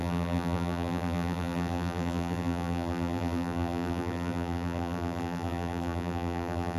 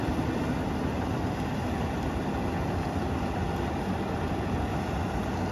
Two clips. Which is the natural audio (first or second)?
second